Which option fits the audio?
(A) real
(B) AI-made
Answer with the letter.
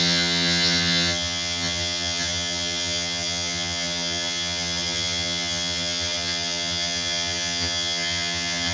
B